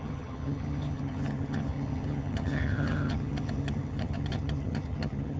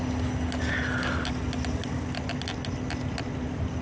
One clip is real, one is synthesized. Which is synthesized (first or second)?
first